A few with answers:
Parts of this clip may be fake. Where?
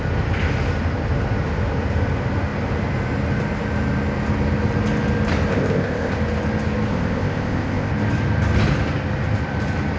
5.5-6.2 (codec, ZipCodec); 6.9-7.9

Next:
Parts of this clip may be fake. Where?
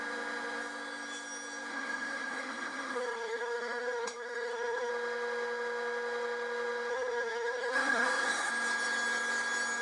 1.7-4.9 (codec, SNAC); 6.9-8.5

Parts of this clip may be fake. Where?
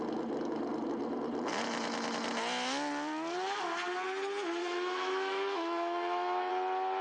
4.6-6.5 (autoencoder, DAC-VAE)